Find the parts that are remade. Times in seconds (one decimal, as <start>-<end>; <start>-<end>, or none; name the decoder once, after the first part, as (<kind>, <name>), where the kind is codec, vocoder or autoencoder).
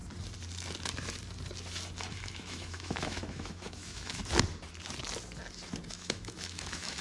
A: 2.1-4.2 (autoencoder, DAC-VAE); 5.9-7.0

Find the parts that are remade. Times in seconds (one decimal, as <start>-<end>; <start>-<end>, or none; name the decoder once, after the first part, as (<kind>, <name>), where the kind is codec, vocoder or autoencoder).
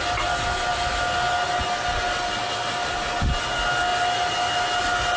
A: none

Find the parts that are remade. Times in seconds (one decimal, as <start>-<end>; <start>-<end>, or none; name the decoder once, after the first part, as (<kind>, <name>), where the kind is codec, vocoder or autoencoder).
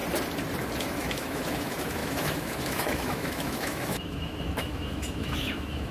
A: 0.8-5.9 (autoencoder, DAC-VAE)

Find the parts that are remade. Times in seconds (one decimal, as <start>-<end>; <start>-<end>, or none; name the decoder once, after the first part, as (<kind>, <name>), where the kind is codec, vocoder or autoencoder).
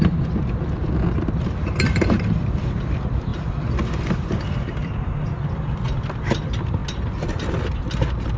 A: 0.0-6.8 (vocoder, BigVGAN v2)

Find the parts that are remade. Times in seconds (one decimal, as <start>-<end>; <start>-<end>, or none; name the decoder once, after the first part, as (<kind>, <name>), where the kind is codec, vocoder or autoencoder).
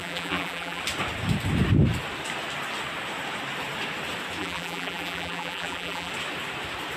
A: 0.0-0.8 (vocoder, BigVGAN v2); 4.4-6.1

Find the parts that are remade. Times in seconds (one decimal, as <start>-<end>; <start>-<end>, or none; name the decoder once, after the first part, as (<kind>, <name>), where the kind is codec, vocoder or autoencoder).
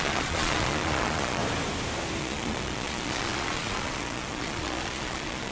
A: 0.0-1.4 (vocoder, Vocos); 2.2-5.5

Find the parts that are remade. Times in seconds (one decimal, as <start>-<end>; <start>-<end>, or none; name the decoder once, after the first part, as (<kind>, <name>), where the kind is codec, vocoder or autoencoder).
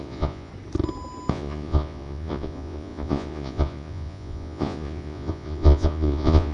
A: 0.0-0.5 (vocoder, Vocos); 1.3-6.5